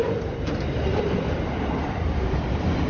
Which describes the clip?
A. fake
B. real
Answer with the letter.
B